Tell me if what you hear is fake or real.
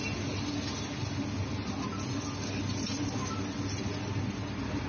real